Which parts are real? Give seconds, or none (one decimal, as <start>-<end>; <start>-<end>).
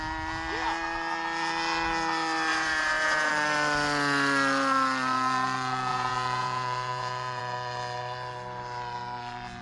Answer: 0.0-2.5; 3.3-5.9; 7.4-9.6